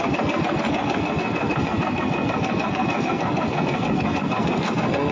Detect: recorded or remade remade